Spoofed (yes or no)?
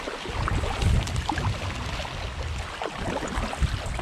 no